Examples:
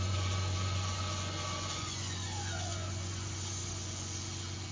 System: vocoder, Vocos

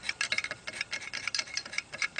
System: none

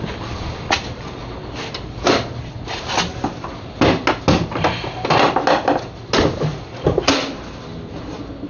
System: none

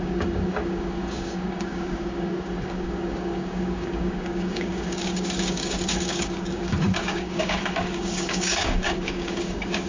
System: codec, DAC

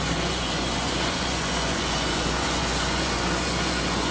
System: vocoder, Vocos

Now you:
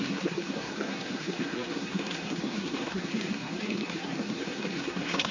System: codec, SNAC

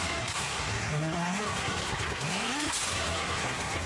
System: codec, SNAC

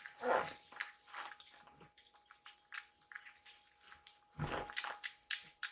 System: none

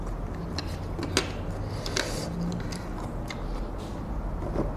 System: none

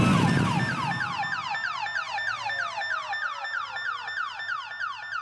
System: none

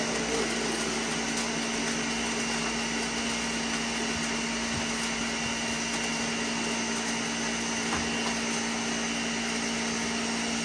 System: none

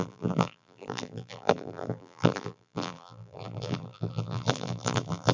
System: vocoder, BigVGAN v2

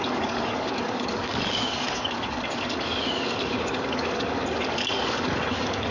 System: codec, DAC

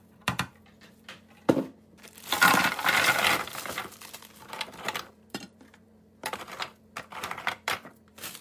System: vocoder, BigVGAN v2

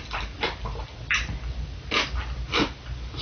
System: vocoder, BigVGAN v2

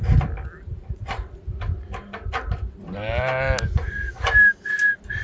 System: none